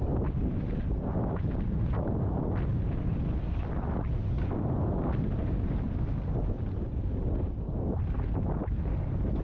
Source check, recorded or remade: recorded